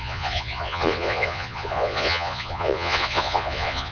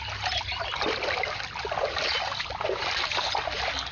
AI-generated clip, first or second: first